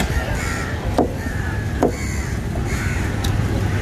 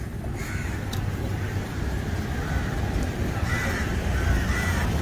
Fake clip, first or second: second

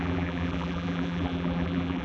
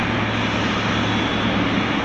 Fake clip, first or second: first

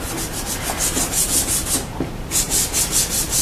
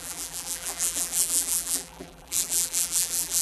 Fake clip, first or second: second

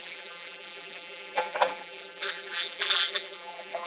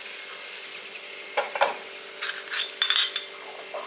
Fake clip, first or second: first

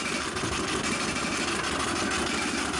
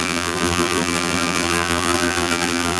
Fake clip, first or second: second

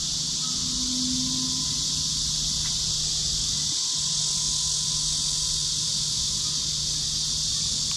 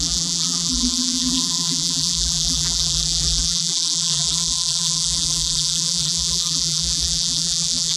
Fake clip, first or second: second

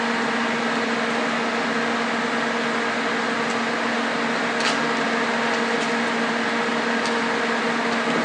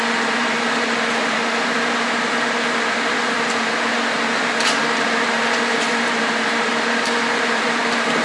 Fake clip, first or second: second